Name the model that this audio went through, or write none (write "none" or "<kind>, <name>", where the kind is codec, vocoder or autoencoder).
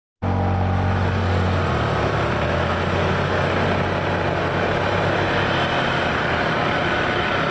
none